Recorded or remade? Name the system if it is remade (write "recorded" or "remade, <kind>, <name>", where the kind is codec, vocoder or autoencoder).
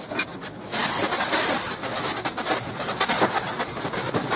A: recorded